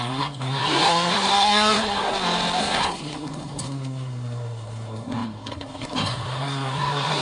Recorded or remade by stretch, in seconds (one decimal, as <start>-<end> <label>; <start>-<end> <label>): 0.0-2.1 remade; 2.1-2.6 recorded; 2.6-7.2 remade

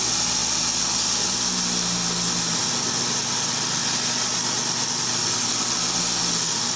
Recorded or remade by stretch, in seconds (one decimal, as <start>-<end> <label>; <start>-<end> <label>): 0.0-6.8 recorded

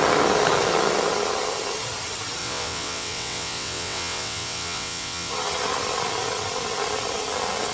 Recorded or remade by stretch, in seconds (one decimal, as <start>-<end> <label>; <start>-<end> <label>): 0.0-2.4 recorded; 2.4-5.3 remade; 5.3-7.7 recorded

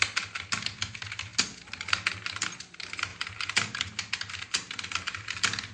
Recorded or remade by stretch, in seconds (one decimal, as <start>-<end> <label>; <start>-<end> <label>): 0.0-5.7 recorded

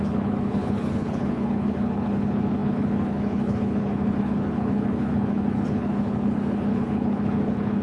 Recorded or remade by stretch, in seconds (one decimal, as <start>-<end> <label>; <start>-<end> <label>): 0.0-7.8 remade